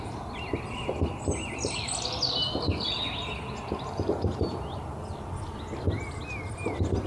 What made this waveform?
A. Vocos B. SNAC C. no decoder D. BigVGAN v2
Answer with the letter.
C